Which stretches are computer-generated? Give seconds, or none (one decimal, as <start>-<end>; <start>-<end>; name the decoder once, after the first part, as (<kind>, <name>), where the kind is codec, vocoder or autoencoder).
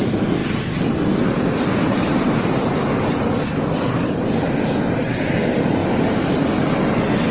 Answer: 0.0-5.8 (vocoder, BigVGAN v2); 6.8-7.3